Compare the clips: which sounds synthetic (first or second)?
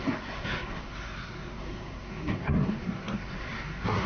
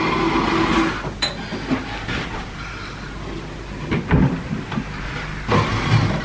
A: first